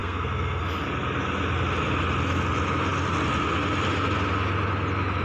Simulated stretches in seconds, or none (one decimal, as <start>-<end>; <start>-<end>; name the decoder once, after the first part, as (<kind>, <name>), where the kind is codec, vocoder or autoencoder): 0.0-0.6 (codec, SNAC)